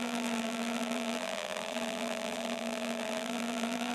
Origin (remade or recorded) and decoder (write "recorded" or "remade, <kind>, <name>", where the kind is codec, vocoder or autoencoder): remade, vocoder, BigVGAN v2